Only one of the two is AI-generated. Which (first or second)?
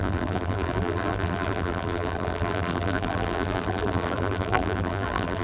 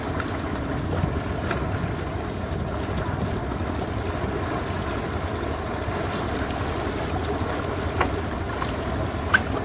first